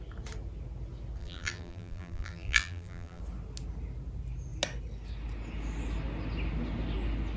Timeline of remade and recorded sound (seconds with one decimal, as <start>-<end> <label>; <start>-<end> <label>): 0.0-1.2 recorded; 1.2-3.2 remade; 3.2-7.4 recorded